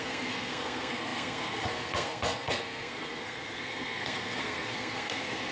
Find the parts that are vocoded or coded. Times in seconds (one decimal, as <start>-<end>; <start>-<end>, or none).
0.0-5.5